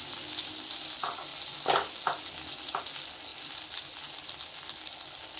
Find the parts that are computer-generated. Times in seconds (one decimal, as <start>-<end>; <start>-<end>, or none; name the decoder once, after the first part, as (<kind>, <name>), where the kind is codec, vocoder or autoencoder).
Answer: none